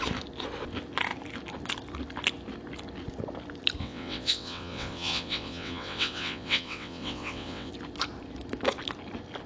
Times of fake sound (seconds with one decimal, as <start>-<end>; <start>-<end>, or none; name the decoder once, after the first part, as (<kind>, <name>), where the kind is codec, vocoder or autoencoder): 3.8-7.7 (vocoder, WaveNeXt)